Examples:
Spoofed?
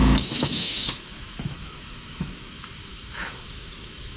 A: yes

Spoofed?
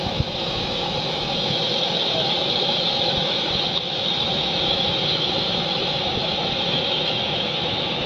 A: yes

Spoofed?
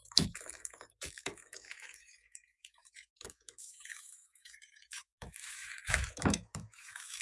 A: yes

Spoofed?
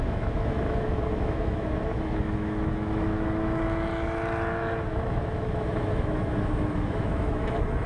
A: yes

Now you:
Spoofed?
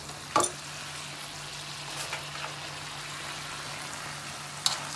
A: no